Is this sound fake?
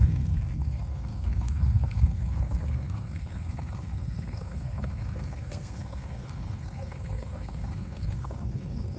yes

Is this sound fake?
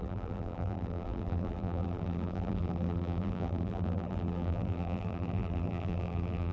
yes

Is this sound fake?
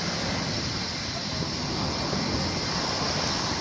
no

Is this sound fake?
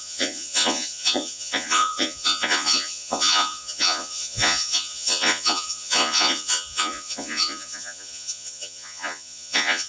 yes